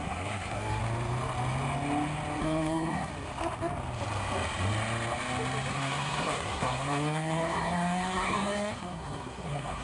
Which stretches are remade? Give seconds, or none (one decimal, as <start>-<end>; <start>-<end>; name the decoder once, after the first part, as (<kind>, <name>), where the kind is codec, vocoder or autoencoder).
0.0-0.8 (codec, SNAC); 2.4-3.1; 5.7-9.8